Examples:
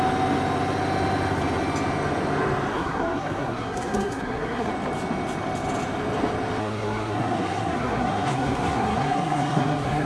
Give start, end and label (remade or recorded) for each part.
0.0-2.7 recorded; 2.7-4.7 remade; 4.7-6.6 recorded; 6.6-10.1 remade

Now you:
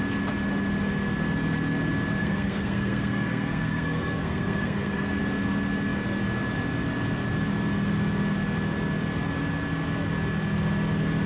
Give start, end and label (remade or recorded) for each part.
0.0-2.2 recorded; 2.2-5.2 remade; 5.2-11.3 recorded

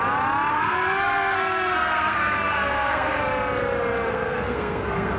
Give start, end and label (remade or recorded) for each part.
0.0-0.5 recorded; 0.5-3.2 remade; 3.2-4.1 recorded; 4.1-5.2 remade